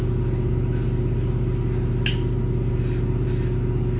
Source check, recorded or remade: recorded